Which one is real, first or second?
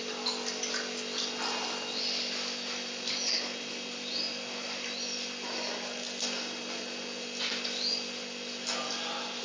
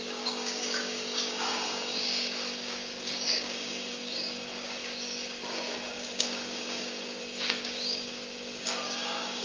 first